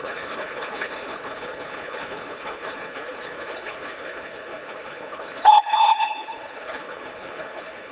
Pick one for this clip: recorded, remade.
remade